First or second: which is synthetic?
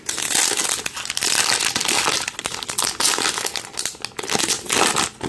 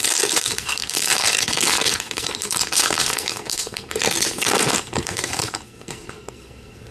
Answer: second